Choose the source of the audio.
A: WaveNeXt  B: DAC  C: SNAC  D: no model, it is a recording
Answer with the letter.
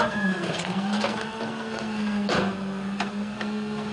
C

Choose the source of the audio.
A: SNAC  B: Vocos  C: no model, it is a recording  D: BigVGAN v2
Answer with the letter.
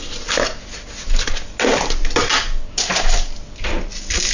C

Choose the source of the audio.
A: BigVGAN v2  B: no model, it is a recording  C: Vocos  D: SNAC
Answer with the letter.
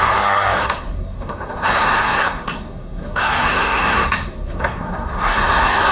D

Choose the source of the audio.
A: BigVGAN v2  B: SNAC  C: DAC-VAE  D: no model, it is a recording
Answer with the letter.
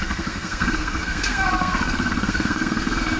B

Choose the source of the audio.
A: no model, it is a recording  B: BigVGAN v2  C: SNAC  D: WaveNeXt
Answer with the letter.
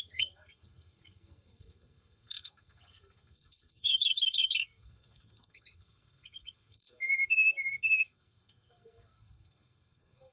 C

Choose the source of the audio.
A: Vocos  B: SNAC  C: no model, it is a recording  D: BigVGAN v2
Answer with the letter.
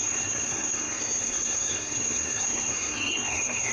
B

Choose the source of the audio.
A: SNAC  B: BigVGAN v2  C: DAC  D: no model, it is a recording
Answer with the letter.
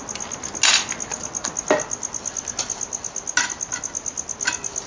D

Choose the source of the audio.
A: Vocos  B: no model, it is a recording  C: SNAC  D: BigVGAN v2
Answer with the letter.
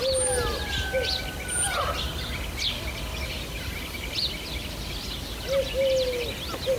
B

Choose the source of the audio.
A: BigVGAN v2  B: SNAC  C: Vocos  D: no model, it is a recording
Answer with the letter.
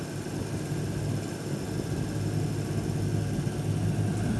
D